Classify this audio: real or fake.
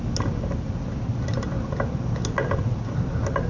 real